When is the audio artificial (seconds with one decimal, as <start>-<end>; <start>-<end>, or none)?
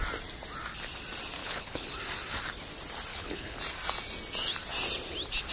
1.4-1.9; 3.1-3.6